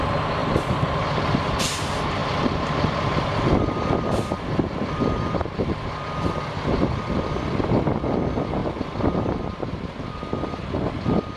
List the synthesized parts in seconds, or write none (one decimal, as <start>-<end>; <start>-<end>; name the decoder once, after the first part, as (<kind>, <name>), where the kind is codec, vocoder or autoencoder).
0.4-1.0 (vocoder, BigVGAN v2); 2.2-7.4